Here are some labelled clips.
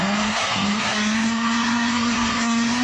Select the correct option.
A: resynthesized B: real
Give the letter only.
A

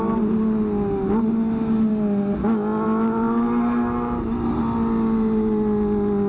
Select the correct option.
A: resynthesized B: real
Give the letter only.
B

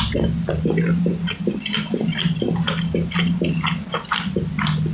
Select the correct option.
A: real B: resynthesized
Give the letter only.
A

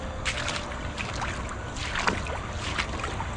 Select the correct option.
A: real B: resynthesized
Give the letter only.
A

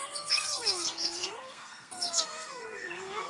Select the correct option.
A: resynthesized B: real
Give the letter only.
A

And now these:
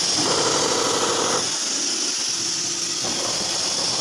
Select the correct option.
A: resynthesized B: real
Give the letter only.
B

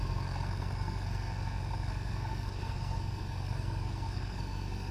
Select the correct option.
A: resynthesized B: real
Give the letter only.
A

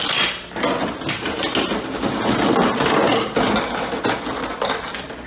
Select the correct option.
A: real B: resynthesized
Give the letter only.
A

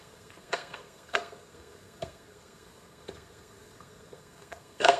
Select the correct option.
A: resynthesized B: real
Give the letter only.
A